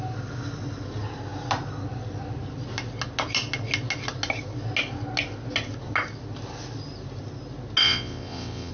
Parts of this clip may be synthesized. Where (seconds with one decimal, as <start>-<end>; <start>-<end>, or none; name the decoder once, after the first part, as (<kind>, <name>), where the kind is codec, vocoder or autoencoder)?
7.8-8.7 (vocoder, WaveNeXt)